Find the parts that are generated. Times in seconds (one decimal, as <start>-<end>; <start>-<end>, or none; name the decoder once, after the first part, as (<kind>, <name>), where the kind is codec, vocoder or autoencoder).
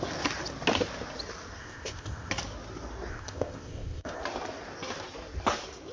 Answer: 1.6-2.3 (codec, ZipCodec); 3.1-4.2